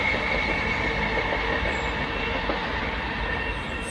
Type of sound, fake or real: real